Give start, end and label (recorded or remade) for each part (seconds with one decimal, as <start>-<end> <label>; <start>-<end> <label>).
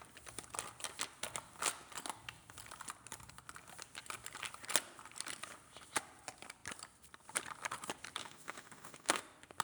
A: 0.0-8.2 recorded; 8.2-9.2 remade; 9.2-9.6 recorded